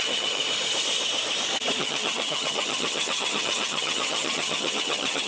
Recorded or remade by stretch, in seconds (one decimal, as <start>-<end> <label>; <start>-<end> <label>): 0.0-0.4 remade; 0.4-1.8 recorded; 1.8-5.3 remade